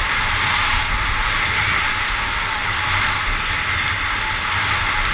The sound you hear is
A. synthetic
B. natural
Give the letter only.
B